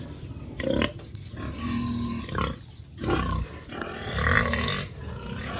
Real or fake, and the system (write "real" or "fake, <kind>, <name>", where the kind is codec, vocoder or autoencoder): real